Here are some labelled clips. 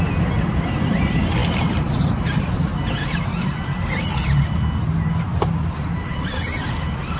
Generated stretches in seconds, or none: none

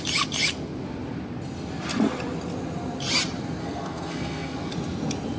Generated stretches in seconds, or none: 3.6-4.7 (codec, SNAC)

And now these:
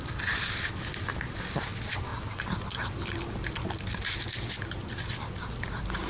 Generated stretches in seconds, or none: none

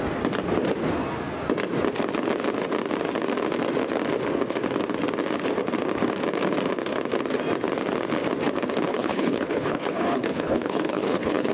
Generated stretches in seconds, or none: 8.9-11.5 (codec, HILCodec)